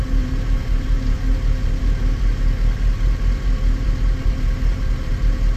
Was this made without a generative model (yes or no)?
no